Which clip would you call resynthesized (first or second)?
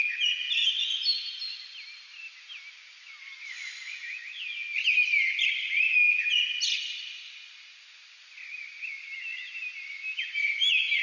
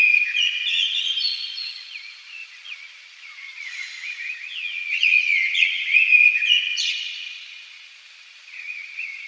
second